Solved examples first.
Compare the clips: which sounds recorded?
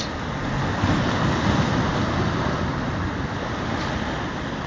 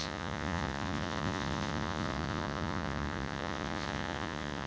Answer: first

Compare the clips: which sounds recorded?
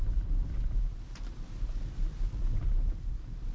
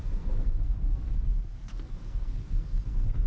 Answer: first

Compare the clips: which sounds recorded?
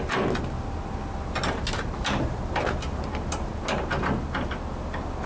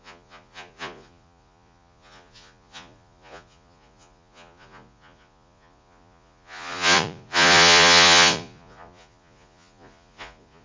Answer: first